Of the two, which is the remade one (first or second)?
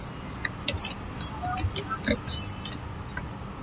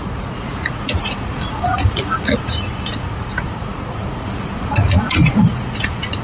second